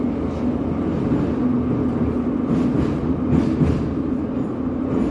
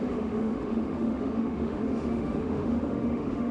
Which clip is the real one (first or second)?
first